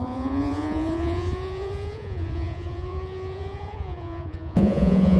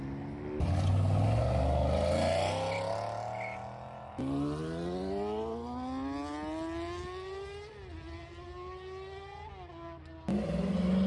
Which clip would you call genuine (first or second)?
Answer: second